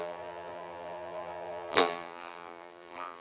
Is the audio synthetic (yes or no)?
yes